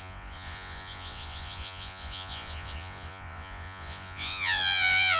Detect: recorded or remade remade